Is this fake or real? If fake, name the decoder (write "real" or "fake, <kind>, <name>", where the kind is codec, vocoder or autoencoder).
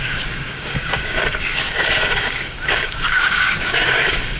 fake, codec, DAC